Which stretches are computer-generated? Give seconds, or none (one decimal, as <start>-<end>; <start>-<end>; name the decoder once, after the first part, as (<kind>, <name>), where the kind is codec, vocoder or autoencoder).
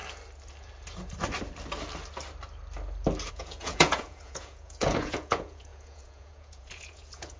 3.3-7.4 (vocoder, Vocos)